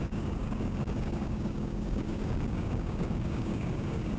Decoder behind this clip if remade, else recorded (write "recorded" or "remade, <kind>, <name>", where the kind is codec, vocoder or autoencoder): remade, codec, DAC